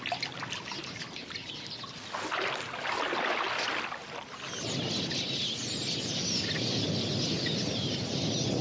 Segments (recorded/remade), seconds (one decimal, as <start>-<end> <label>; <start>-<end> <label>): 0.0-8.6 recorded